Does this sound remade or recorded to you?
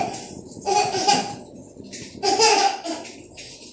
recorded